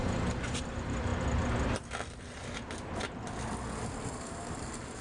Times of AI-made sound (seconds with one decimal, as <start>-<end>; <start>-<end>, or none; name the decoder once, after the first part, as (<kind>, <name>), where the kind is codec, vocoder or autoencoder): 0.0-1.1 (vocoder, BigVGAN v2); 4.1-5.0